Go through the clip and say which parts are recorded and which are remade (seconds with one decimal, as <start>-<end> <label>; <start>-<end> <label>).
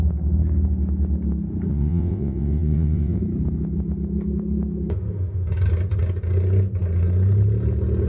0.0-1.7 recorded; 1.7-3.2 remade; 3.2-8.1 recorded